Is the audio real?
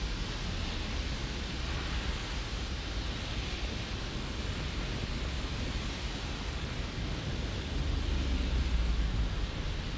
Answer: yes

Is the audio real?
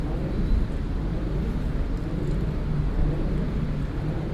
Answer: yes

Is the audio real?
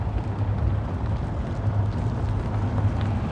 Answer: yes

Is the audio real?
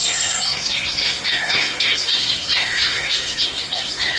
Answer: no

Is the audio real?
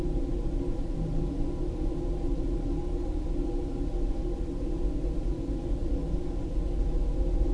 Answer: yes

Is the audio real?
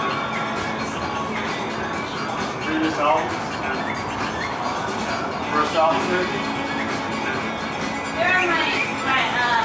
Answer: yes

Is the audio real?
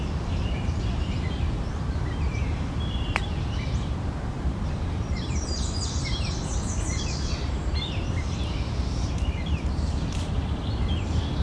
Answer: no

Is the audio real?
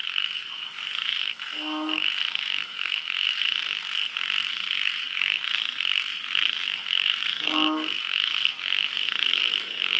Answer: no